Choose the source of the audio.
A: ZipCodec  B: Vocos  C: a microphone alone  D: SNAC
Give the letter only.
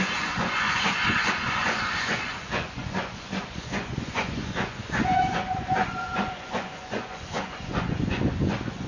B